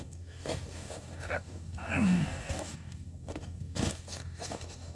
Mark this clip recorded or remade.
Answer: remade